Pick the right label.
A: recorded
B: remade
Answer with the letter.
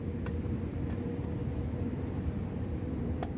A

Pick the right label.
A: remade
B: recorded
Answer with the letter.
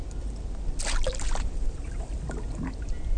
A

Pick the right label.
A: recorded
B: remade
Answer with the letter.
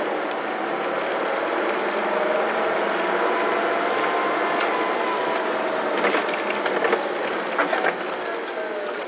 A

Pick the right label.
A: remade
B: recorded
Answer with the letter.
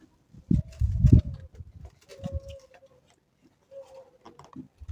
B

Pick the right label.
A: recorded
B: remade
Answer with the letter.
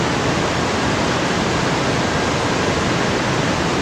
A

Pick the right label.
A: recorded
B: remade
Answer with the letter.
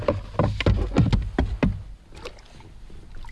A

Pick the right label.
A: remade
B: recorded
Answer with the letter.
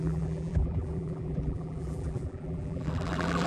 A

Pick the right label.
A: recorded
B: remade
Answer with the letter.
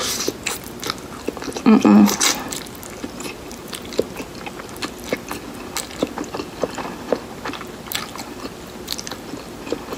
A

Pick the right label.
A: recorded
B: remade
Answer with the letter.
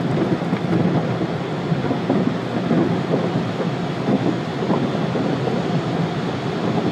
A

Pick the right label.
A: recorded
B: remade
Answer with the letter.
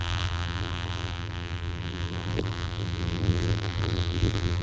B